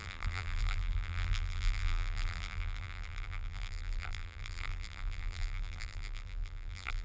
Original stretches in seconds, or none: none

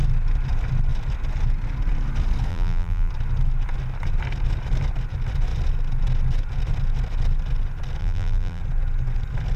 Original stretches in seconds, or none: 0.0-2.5; 3.1-8.0; 8.6-9.6

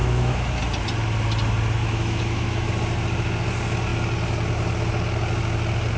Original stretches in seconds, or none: 0.6-1.8; 2.7-6.0

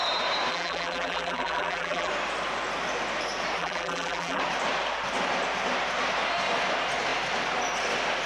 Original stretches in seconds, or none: 0.0-0.5; 2.1-3.6; 4.4-8.3